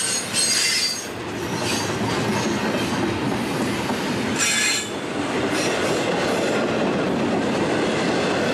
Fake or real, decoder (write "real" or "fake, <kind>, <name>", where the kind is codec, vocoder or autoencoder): real